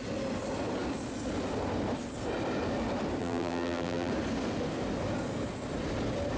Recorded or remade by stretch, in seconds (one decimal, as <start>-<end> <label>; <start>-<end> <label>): 0.0-3.2 recorded; 3.2-4.1 remade; 4.1-6.4 recorded